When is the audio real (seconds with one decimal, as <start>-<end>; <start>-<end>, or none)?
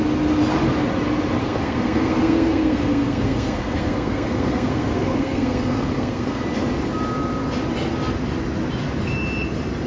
0.0-1.4; 6.4-9.9